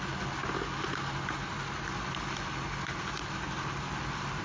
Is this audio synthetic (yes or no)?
no